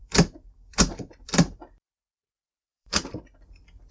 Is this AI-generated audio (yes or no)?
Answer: yes